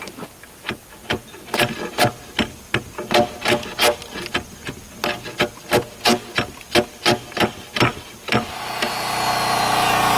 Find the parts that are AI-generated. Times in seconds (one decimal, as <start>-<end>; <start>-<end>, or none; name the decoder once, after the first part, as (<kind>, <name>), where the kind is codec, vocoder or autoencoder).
none